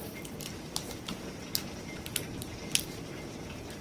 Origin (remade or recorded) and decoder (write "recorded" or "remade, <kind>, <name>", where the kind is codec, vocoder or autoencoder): remade, vocoder, BigVGAN v2